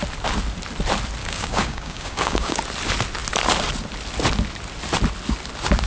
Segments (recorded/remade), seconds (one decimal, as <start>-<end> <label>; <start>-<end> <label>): 0.0-1.2 recorded; 1.2-2.6 remade; 2.6-5.9 recorded